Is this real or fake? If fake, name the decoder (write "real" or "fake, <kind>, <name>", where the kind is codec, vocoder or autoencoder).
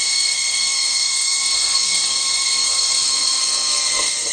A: fake, codec, SNAC